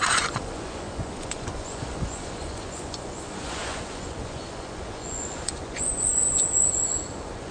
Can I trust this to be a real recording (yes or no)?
no